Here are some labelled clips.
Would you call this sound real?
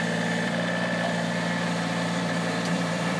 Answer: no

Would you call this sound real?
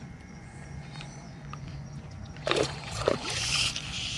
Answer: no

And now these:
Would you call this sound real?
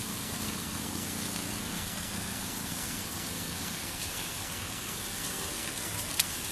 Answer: no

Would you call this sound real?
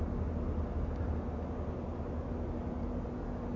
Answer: yes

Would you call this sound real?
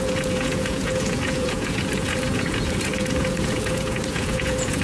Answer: no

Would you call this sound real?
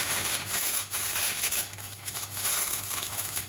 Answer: no